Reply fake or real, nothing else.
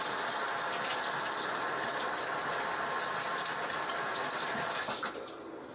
real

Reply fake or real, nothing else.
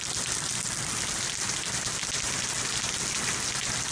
real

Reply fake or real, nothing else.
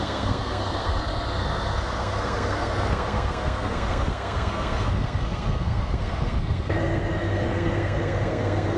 fake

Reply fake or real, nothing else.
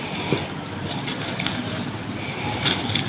real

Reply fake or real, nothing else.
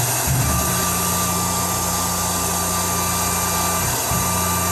real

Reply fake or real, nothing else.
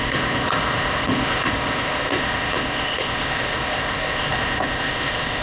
fake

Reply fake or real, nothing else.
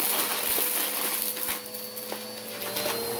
real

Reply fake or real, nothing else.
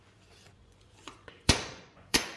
fake